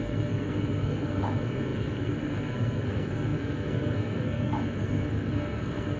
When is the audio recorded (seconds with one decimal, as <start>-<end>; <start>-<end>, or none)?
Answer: none